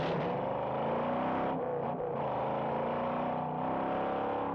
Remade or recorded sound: recorded